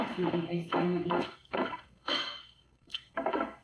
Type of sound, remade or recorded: remade